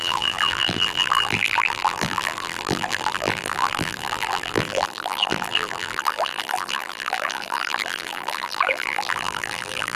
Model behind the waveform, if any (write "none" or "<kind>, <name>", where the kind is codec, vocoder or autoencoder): vocoder, BigVGAN v2